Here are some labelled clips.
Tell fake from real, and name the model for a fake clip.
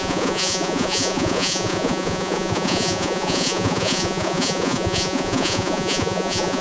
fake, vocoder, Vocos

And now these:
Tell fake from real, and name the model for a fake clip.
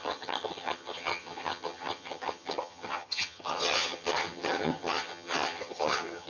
fake, vocoder, HiFi-GAN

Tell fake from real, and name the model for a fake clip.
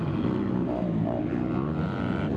real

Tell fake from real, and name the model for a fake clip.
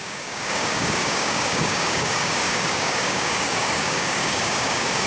fake, codec, DAC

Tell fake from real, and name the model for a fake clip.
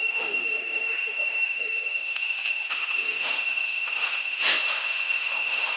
fake, autoencoder, DAC-VAE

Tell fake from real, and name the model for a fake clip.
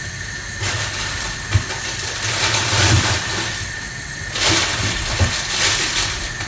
real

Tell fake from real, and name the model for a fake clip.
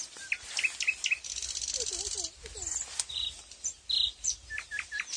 real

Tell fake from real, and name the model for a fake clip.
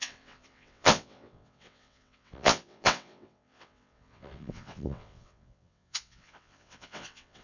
fake, vocoder, WaveNeXt